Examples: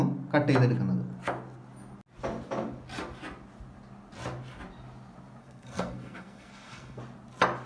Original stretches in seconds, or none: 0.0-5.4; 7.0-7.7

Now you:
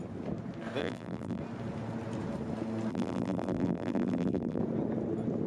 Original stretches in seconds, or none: 0.0-0.8; 1.4-2.9; 4.6-5.5

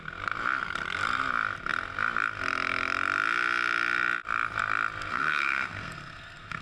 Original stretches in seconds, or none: 0.0-5.1

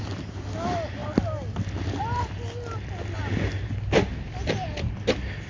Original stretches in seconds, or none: 0.0-5.5

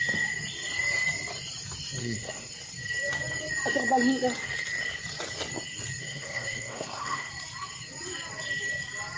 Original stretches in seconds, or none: 0.0-2.0; 2.5-6.0; 7.3-9.2

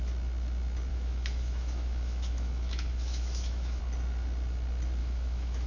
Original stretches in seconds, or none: 0.0-0.9; 3.8-5.0

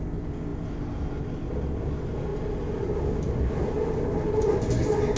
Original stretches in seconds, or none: 0.0-5.2

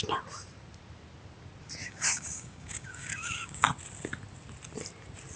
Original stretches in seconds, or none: 0.0-1.8; 3.7-5.4